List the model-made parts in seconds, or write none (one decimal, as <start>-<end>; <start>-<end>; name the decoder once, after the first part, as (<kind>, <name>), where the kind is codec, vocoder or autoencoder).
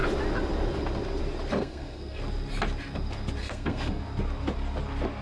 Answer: 1.6-2.2 (codec, SNAC); 3.4-4.0